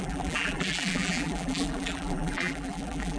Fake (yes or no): yes